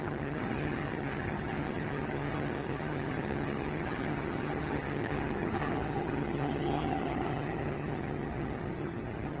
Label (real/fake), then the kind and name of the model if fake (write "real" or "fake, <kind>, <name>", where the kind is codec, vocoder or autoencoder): fake, vocoder, HiFi-GAN